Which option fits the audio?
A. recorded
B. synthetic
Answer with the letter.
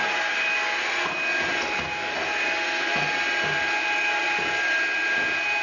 A